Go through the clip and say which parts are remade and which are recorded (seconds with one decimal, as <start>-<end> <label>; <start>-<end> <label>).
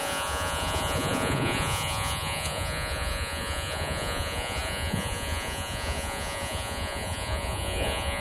0.0-8.2 remade